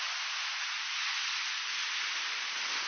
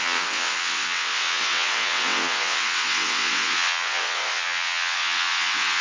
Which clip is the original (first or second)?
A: first